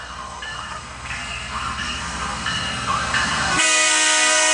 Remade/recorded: remade